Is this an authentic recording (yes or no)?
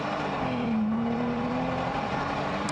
no